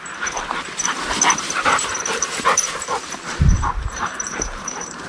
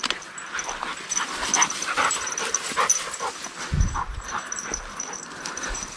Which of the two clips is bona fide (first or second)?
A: second